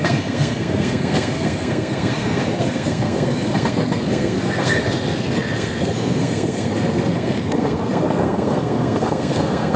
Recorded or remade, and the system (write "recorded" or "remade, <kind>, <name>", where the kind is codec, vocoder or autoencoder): remade, codec, SNAC